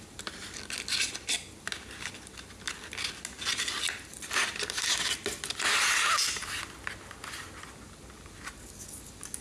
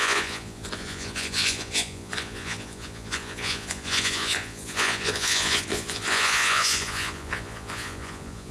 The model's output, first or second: second